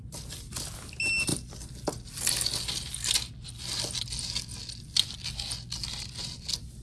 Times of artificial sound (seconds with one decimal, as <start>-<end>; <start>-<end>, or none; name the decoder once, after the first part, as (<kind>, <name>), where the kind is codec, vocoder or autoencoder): none

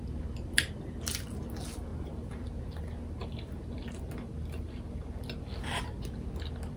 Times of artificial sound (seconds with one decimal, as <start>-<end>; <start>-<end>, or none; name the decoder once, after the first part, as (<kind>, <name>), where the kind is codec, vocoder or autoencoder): none